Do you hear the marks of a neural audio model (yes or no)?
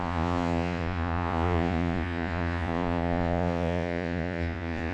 yes